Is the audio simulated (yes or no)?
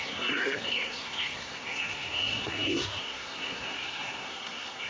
yes